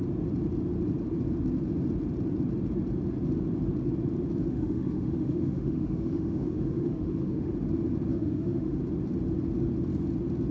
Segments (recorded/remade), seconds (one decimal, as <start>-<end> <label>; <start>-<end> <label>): 0.0-4.5 recorded; 4.5-7.5 remade; 7.5-8.1 recorded; 8.1-8.8 remade; 8.8-10.5 recorded